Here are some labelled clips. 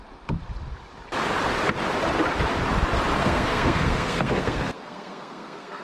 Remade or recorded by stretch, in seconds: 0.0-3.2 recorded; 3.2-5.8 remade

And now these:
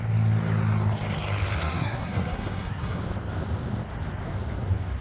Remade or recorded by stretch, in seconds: 0.0-1.6 recorded; 1.6-3.0 remade; 3.0-5.0 recorded

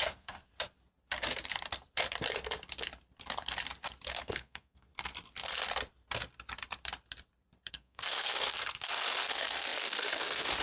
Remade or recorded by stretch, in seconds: 0.0-0.5 remade; 0.5-4.2 recorded; 4.2-4.9 remade; 4.9-7.7 recorded; 7.7-10.6 remade

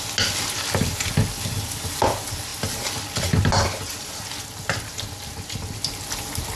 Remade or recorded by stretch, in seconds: 0.0-6.6 recorded